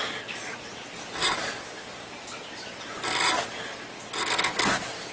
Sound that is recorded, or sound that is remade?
recorded